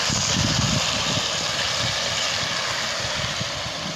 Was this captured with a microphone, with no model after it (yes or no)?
yes